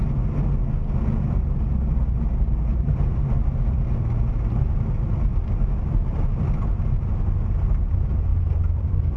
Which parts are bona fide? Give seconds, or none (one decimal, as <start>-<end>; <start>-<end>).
0.0-2.7; 3.8-8.3